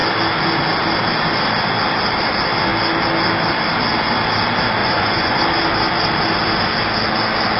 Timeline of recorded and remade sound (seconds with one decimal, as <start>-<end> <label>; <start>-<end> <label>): 0.0-4.8 recorded; 4.8-5.4 remade; 5.4-7.6 recorded